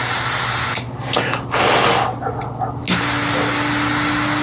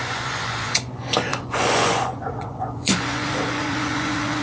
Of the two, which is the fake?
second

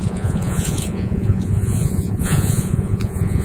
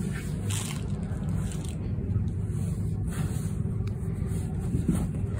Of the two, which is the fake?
first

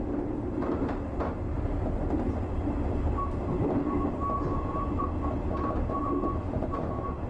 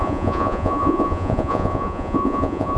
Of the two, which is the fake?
second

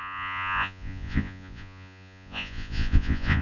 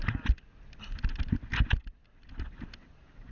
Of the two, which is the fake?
first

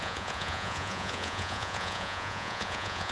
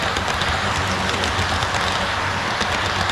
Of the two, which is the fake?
first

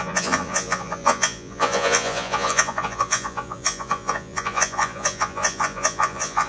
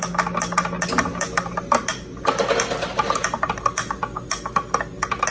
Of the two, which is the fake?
first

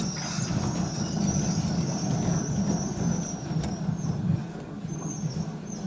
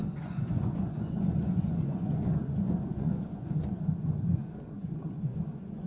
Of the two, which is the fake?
second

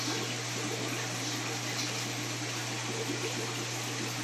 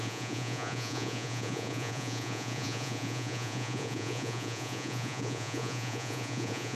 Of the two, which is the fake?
second